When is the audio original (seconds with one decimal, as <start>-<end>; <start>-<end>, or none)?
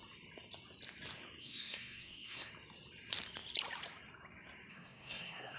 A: 0.0-1.4; 2.5-4.7